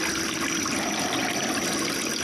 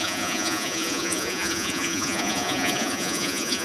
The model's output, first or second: second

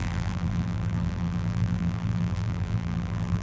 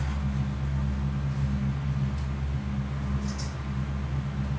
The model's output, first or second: first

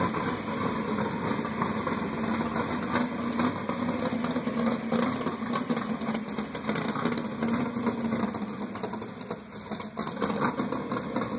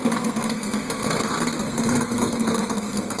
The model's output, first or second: second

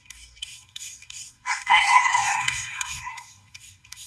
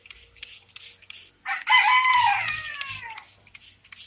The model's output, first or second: first